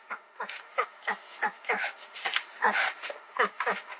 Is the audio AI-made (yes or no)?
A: yes